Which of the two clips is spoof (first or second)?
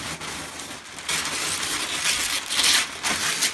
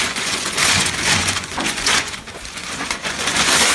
second